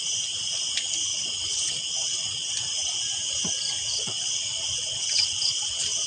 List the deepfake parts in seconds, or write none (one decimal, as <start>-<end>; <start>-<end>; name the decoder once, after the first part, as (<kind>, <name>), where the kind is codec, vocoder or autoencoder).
1.1-2.5 (vocoder, WaveNeXt); 3.9-6.1